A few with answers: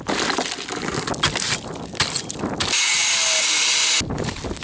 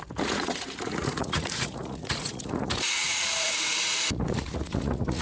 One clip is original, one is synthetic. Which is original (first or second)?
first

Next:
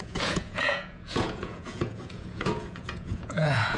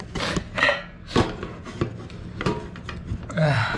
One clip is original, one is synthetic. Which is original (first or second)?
second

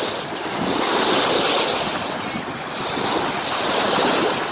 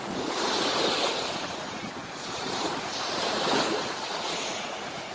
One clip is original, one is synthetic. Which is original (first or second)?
first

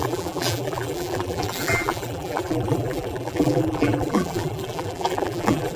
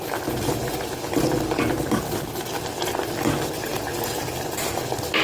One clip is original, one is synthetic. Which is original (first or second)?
second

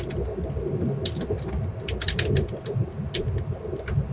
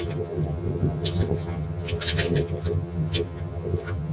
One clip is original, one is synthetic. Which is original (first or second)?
first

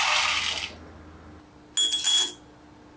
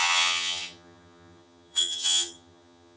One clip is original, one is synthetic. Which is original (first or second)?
first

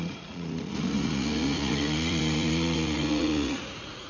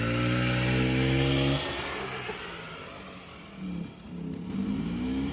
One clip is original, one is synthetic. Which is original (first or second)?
second